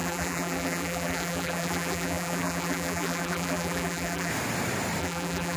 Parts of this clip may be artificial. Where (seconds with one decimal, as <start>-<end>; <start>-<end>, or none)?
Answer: 0.0-4.3; 5.0-5.6